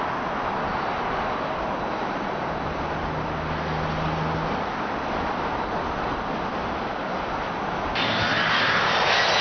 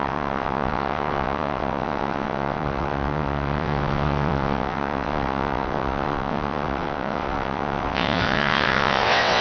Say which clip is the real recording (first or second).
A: first